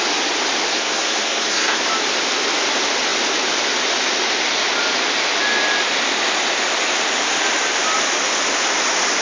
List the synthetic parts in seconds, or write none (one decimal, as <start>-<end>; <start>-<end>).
0.7-1.8